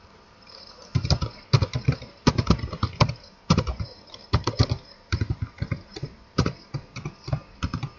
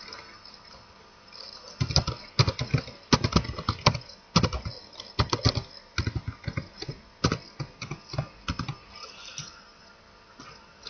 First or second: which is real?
second